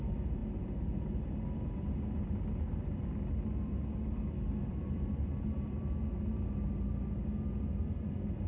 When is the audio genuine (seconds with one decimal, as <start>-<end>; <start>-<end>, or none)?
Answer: 0.0-8.5